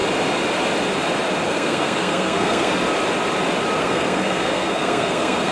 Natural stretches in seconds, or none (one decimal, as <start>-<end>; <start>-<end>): 0.0-1.5; 2.7-3.8